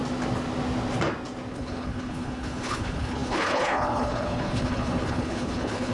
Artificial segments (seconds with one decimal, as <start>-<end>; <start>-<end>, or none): 1.5-5.9